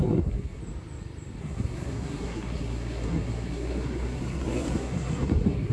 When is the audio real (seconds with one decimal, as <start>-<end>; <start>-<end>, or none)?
0.6-1.4